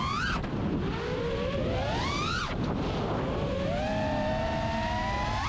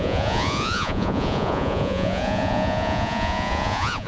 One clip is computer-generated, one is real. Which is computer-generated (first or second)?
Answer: second